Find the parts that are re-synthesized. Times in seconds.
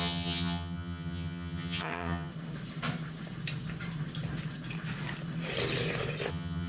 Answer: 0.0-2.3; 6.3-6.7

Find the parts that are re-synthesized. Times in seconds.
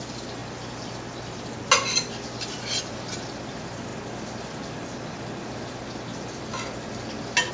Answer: none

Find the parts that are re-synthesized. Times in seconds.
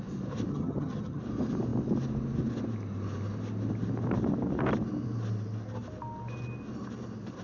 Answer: 0.5-1.2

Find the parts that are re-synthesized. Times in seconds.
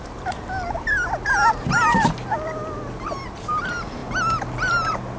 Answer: none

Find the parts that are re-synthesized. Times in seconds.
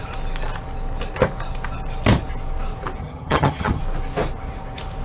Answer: 3.0-3.8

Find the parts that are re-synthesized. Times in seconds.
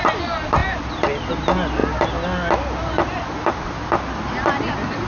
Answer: none